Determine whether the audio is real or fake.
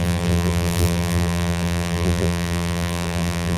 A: fake